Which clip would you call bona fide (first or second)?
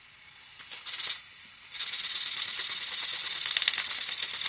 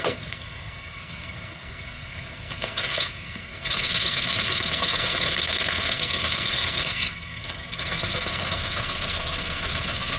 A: first